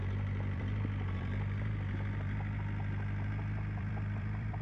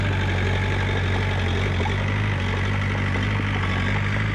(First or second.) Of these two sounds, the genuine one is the second